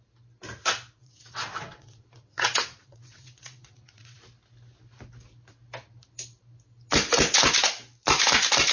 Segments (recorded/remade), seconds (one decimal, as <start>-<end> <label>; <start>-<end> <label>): 0.0-1.0 recorded; 1.0-4.2 remade; 4.2-8.7 recorded